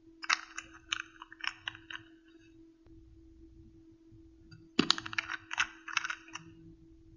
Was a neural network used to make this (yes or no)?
no